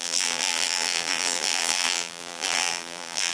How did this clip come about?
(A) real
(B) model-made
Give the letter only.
B